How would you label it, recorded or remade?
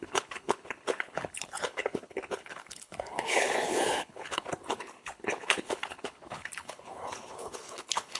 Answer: remade